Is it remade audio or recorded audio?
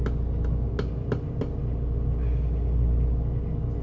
recorded